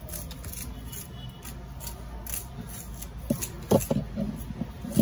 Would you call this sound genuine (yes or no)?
yes